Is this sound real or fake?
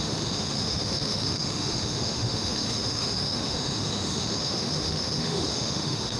fake